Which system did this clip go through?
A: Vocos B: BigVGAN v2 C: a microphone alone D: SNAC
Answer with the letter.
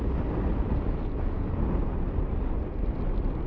C